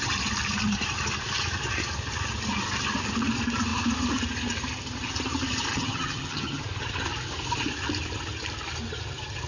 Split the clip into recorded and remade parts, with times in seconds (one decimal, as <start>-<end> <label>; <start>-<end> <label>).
0.0-5.7 recorded; 5.7-6.6 remade; 6.6-9.5 recorded